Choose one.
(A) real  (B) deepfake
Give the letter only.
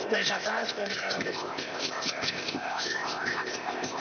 B